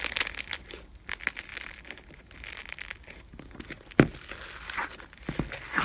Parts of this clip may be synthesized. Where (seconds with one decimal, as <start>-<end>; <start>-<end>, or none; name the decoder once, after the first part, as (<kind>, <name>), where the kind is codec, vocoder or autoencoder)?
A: none